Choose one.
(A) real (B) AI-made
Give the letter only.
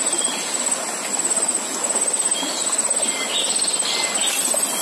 A